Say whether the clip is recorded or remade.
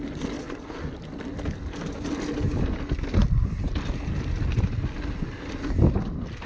recorded